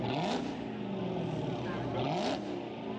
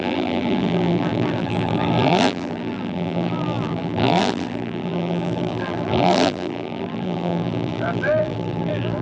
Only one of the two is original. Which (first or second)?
first